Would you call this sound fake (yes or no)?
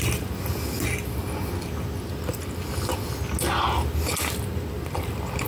no